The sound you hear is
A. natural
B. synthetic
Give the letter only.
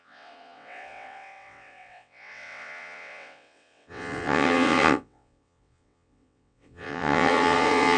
B